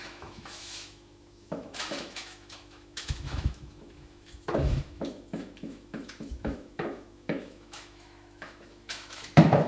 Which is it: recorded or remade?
remade